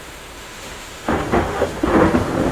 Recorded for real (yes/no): no